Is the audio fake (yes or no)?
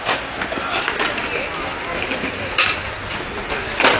no